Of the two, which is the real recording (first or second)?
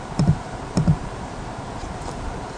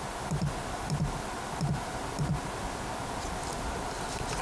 second